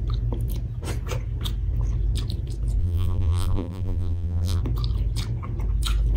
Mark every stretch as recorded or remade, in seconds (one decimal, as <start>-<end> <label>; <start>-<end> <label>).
0.0-2.8 recorded; 2.8-4.6 remade; 4.6-6.2 recorded